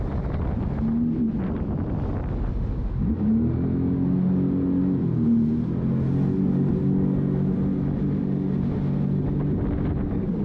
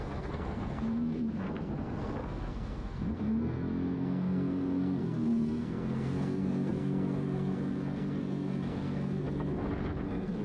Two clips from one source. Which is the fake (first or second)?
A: second